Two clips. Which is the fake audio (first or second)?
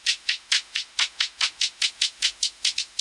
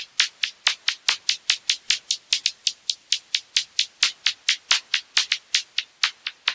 first